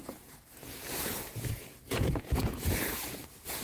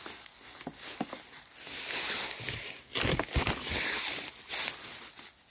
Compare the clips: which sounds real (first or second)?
second